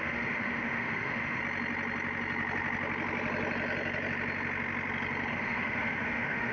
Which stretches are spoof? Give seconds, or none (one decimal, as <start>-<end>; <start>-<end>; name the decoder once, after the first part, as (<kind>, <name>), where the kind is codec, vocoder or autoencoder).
0.0-1.4 (autoencoder, DAC-VAE); 5.3-6.5